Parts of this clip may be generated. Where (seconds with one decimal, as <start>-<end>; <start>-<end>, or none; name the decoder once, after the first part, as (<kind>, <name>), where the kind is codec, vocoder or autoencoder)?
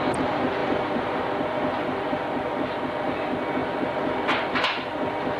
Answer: 0.6-1.2 (vocoder, BigVGAN v2)